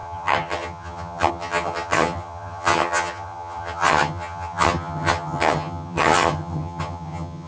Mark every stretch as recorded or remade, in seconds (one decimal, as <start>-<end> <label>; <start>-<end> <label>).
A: 0.0-7.5 remade